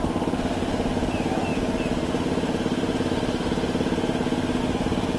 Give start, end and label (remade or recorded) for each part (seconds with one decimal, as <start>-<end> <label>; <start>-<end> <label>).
0.0-5.2 recorded